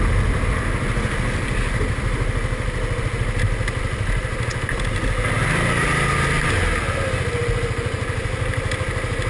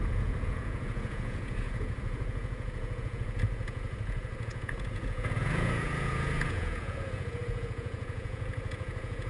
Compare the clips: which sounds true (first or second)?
first